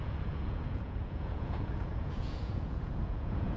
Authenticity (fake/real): fake